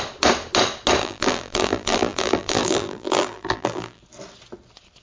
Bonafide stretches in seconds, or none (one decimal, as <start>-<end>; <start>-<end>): 0.0-1.0; 4.0-5.0